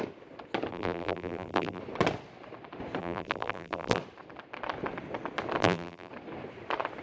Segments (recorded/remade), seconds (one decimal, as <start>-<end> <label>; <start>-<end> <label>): 0.0-0.7 recorded; 0.7-1.8 remade; 1.8-3.0 recorded; 3.0-4.0 remade; 4.0-5.6 recorded; 5.6-6.1 remade; 6.1-7.0 recorded